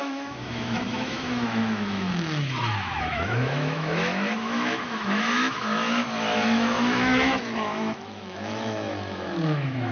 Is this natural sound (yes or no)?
no